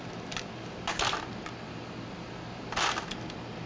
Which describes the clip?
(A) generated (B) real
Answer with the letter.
B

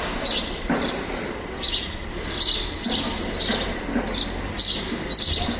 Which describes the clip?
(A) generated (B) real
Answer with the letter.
B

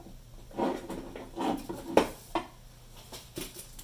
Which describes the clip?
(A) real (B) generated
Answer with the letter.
A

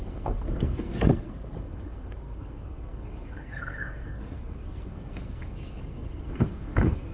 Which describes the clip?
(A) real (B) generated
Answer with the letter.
B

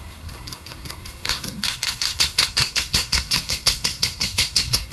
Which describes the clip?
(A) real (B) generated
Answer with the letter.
B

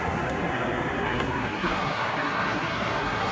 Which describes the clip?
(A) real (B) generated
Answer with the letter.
B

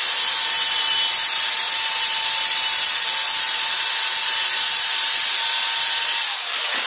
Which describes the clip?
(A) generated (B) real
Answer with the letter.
B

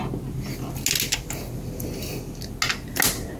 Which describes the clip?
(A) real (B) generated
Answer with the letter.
A